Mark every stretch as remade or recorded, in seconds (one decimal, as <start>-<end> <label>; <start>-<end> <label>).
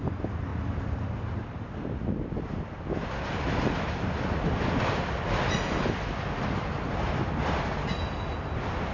0.0-8.9 recorded